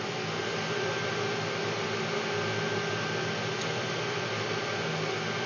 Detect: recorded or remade recorded